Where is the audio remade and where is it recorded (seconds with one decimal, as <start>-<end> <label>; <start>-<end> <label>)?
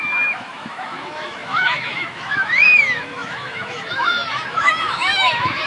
0.0-5.7 remade